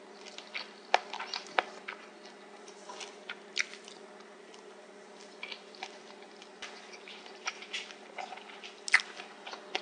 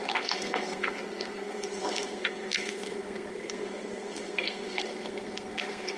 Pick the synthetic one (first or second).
second